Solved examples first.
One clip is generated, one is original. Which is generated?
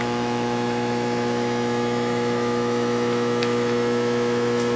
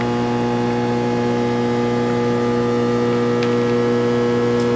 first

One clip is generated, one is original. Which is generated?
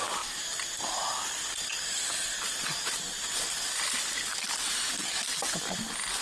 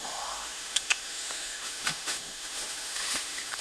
second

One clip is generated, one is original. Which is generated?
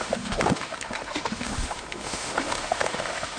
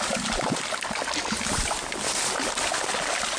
first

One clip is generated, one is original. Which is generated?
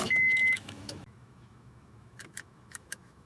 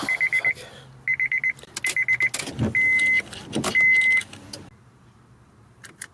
first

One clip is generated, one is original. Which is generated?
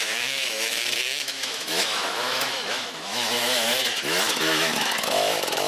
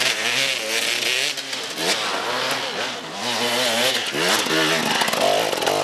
first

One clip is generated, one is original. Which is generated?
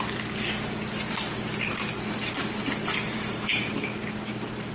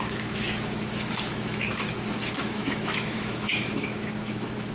second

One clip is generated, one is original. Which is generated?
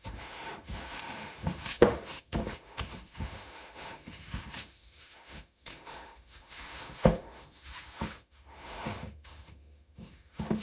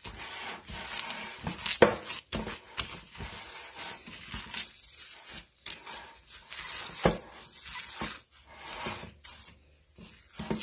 first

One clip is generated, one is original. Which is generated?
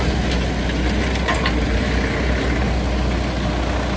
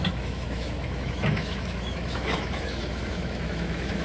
second